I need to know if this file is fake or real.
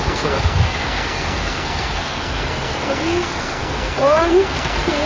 fake